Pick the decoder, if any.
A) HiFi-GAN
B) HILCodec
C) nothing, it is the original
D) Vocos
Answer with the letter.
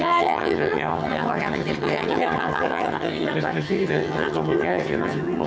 A